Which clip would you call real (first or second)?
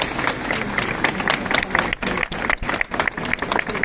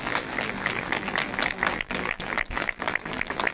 first